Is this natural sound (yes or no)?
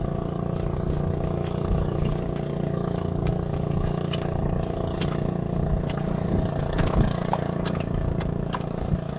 no